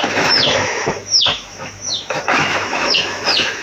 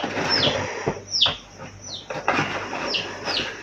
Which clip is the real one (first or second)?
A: second